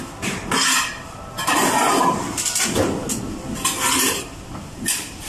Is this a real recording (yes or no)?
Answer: yes